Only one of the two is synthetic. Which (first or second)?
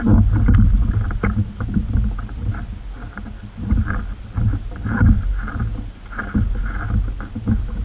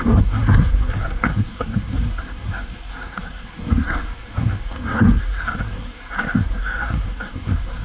second